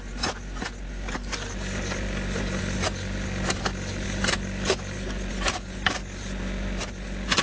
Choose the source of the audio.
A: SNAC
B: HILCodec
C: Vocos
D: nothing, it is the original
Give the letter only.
D